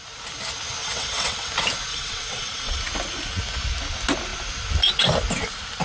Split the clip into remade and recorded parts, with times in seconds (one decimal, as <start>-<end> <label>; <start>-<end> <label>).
0.0-0.8 recorded; 0.8-1.5 remade; 1.5-1.9 recorded; 1.9-2.8 remade; 2.8-5.8 recorded